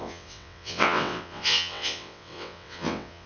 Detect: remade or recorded remade